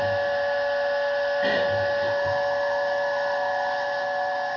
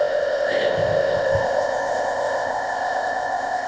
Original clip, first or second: first